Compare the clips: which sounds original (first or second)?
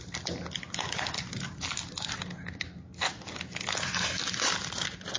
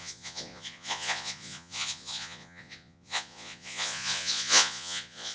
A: first